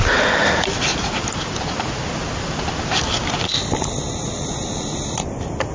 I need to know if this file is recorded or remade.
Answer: recorded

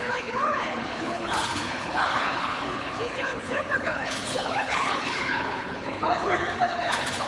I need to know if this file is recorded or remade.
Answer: remade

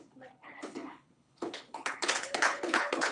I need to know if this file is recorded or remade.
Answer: remade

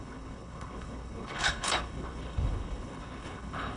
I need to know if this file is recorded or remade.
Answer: remade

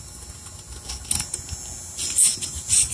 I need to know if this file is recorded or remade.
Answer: recorded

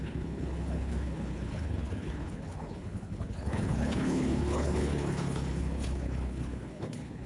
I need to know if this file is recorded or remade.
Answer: remade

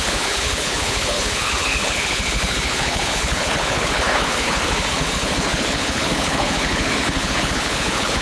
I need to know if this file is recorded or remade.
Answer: remade